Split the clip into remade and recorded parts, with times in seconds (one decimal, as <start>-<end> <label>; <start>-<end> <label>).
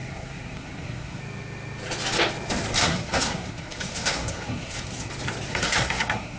0.0-1.2 remade; 1.2-2.8 recorded; 2.8-5.1 remade; 5.1-5.5 recorded; 5.5-6.4 remade